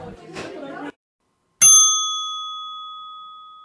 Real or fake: real